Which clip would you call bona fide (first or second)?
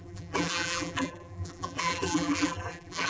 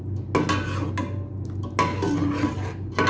second